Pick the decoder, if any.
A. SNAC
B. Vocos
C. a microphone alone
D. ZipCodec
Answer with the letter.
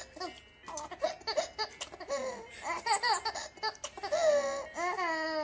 C